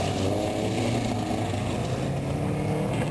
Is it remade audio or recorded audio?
recorded